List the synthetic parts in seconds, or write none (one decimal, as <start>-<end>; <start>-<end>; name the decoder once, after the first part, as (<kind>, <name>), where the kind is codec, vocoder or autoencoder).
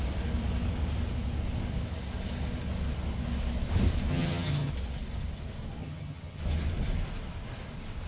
4.1-4.7 (vocoder, HiFi-GAN); 5.8-6.4